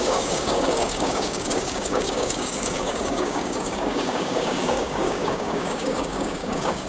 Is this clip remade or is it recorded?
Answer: remade